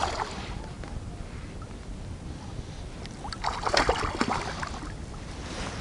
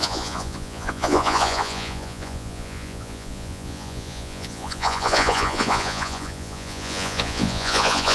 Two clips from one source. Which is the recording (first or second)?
first